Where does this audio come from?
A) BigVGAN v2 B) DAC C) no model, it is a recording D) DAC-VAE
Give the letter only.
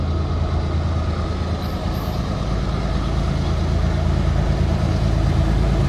C